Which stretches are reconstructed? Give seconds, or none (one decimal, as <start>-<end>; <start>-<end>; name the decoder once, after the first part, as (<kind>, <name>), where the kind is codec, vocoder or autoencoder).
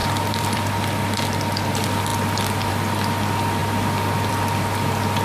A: 0.0-0.7 (vocoder, BigVGAN v2)